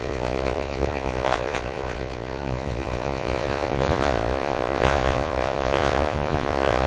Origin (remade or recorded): remade